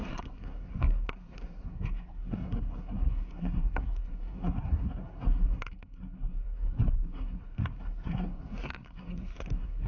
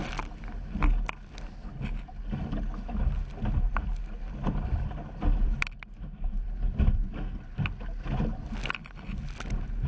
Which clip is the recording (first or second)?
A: second